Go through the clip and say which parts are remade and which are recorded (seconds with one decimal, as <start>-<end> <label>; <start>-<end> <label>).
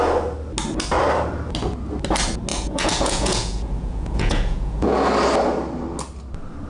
0.0-2.5 recorded; 2.5-5.1 remade; 5.1-6.7 recorded